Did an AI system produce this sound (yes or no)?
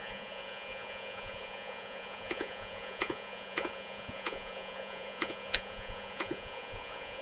yes